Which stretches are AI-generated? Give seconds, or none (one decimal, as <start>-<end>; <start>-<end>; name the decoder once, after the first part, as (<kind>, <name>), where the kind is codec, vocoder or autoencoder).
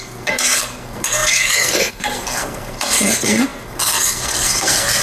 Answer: 0.0-5.0 (codec, SNAC)